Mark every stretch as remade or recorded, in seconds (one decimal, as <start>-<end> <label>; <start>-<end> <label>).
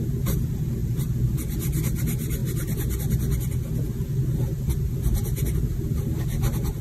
0.0-6.8 recorded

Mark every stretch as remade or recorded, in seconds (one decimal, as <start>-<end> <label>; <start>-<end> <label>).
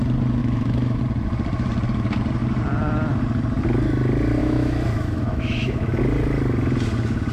0.0-0.4 recorded; 0.4-1.0 remade; 1.0-4.4 recorded; 4.4-6.0 remade; 6.0-7.3 recorded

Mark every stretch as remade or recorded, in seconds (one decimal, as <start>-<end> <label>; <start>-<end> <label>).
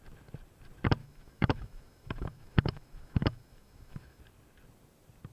0.0-1.0 recorded; 1.0-4.2 remade; 4.2-5.3 recorded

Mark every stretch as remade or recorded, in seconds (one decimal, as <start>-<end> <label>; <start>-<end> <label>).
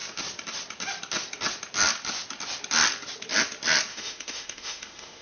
0.0-3.9 recorded; 3.9-5.2 remade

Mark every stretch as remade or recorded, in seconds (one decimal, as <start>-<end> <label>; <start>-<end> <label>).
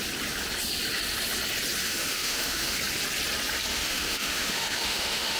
0.0-1.8 recorded; 1.8-2.8 remade; 2.8-3.7 recorded; 3.7-5.4 remade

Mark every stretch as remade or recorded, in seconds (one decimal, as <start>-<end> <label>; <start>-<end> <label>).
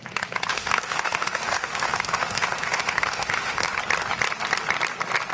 0.0-0.5 recorded; 0.5-3.7 remade; 3.7-5.3 recorded